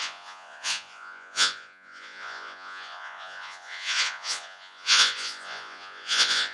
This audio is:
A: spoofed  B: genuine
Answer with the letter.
A